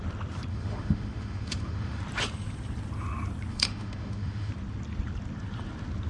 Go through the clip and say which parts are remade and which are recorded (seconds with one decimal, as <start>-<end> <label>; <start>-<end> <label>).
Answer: 0.0-0.5 recorded; 0.5-2.0 remade; 2.0-3.5 recorded; 3.5-4.5 remade; 4.5-6.1 recorded